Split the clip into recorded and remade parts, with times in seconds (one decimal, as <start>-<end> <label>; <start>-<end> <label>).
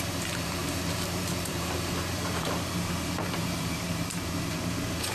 0.0-5.1 remade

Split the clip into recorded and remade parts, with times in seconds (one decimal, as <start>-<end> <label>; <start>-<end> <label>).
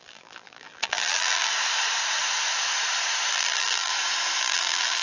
0.0-1.5 remade; 1.5-3.3 recorded; 3.3-3.9 remade; 3.9-4.4 recorded; 4.4-5.0 remade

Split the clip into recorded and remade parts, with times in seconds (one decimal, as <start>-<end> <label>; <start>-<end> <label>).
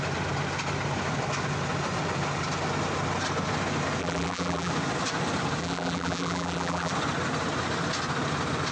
0.0-4.0 recorded; 4.0-4.7 remade; 4.7-5.6 recorded; 5.6-6.9 remade; 6.9-8.7 recorded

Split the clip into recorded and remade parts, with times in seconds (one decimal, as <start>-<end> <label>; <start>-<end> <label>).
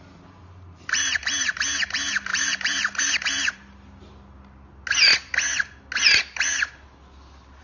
0.0-3.6 remade; 3.6-7.6 recorded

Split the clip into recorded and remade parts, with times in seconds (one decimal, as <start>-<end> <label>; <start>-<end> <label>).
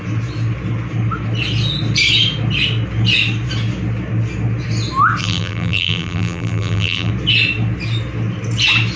0.0-5.2 recorded; 5.2-7.1 remade; 7.1-9.0 recorded